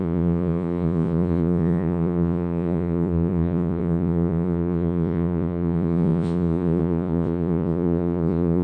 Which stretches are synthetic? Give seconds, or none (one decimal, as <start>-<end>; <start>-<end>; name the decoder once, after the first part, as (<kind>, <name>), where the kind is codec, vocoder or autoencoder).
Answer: 0.0-8.6 (vocoder, Vocos)